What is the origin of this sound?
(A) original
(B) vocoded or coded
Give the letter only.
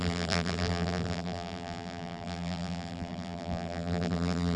B